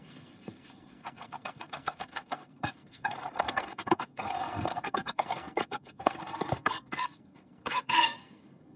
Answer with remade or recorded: remade